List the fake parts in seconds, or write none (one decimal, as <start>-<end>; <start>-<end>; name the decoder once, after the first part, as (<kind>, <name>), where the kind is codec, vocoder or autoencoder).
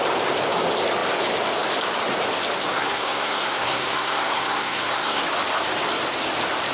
2.6-5.2 (codec, SNAC)